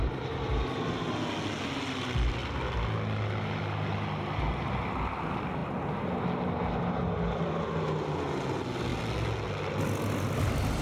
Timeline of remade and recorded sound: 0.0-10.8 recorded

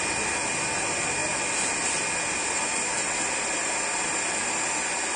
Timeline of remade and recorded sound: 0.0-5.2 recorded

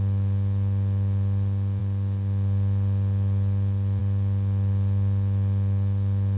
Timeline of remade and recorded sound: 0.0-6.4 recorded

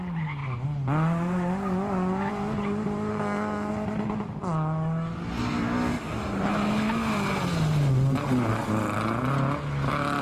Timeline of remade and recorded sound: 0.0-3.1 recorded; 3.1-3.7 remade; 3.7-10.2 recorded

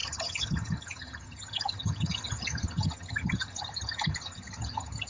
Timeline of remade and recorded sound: 0.0-5.1 remade